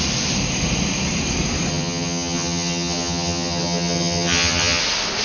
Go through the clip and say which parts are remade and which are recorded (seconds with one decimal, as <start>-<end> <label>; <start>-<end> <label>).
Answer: 0.0-1.7 recorded; 1.7-4.8 remade; 4.8-5.2 recorded